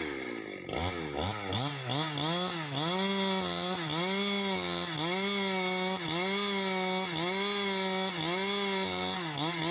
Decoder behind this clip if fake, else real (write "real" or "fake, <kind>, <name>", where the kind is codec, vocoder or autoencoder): real